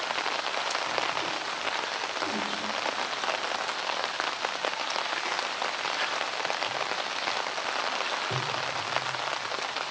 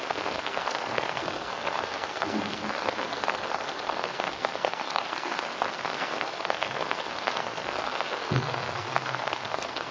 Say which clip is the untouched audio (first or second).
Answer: first